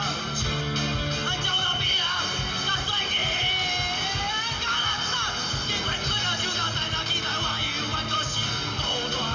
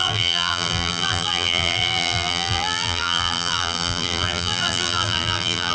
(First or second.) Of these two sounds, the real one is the first